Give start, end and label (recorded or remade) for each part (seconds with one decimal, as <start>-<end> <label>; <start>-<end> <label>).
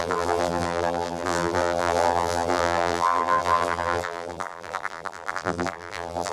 0.0-6.3 remade